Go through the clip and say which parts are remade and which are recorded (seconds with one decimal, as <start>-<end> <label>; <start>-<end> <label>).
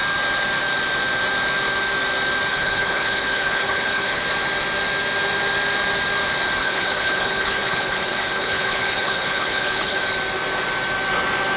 0.0-2.5 recorded; 2.5-4.2 remade; 4.2-6.6 recorded; 6.6-10.0 remade; 10.0-11.6 recorded